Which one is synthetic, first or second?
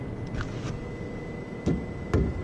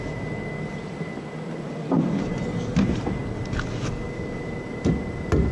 second